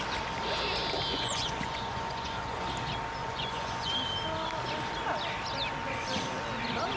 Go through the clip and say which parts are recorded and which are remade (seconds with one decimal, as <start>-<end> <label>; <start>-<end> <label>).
0.0-1.1 recorded; 1.1-2.7 remade; 2.7-3.2 recorded; 3.2-3.9 remade; 3.9-7.0 recorded